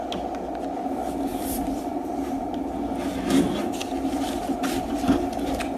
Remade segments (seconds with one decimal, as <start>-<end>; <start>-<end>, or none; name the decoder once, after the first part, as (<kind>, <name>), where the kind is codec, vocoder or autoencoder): none

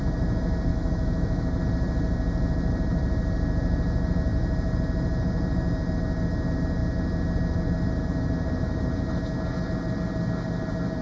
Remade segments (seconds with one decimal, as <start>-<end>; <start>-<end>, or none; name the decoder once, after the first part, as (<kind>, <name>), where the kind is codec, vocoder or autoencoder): 0.7-1.6 (autoencoder, DAC-VAE)

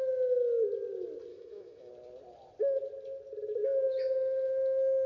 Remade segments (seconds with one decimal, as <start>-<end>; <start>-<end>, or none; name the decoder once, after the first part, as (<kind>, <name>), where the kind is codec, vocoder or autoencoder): 1.3-1.9 (autoencoder, DAC-VAE)

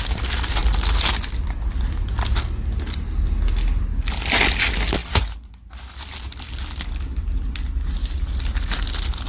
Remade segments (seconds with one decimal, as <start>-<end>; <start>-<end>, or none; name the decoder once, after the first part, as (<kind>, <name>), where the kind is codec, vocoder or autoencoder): none

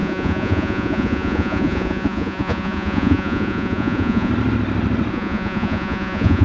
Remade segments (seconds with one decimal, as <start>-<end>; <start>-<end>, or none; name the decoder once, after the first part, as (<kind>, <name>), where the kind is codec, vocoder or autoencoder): 0.0-4.3 (vocoder, Vocos); 5.1-6.4

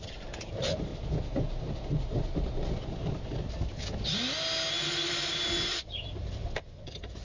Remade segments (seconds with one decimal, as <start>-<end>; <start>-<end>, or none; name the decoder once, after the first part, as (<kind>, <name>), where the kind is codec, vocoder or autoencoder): 0.0-0.9 (vocoder, BigVGAN v2); 5.1-7.2

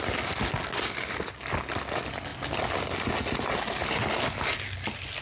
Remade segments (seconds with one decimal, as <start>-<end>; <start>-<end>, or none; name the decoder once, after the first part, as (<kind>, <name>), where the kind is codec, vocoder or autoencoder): none

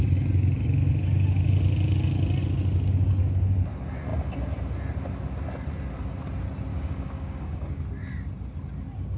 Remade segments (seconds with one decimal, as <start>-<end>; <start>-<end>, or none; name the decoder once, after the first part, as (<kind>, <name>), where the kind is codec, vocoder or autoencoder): 6.7-7.8 (codec, DAC)